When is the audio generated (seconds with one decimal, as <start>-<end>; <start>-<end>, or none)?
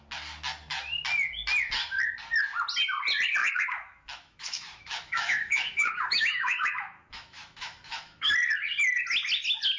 3.4-8.3